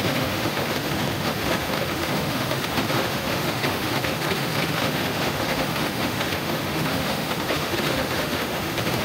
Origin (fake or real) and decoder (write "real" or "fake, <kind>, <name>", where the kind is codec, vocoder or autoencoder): fake, autoencoder, DAC-VAE